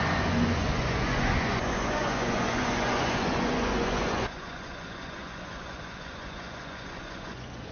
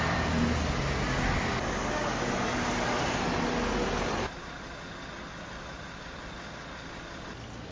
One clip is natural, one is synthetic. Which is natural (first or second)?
second